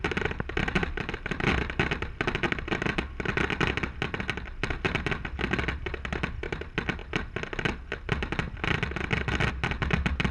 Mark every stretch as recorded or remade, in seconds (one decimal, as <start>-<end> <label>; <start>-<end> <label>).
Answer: 0.0-10.3 recorded